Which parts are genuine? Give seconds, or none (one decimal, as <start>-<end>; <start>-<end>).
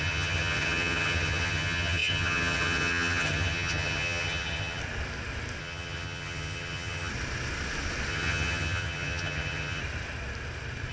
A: 4.8-5.6; 7.1-8.1; 9.8-10.9